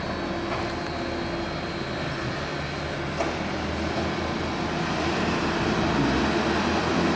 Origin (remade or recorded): recorded